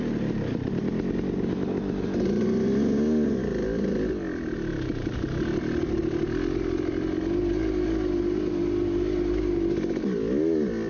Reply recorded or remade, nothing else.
recorded